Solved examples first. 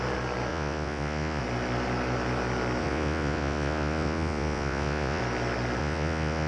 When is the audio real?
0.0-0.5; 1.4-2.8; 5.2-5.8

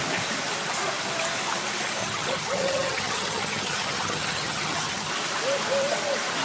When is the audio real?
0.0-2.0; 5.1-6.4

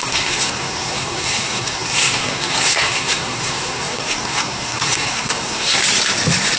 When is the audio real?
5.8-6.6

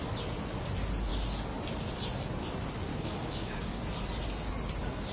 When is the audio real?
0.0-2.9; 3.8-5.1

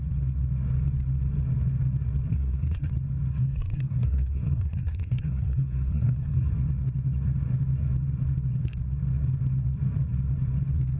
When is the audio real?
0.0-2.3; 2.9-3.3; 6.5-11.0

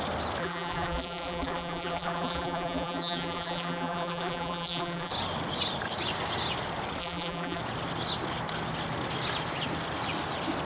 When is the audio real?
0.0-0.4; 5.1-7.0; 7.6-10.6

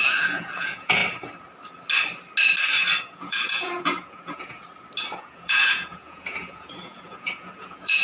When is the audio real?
1.0-3.0; 4.6-5.1

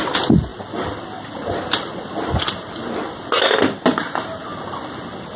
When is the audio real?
0.0-5.4